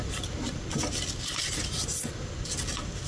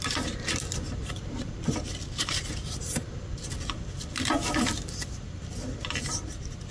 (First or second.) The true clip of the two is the first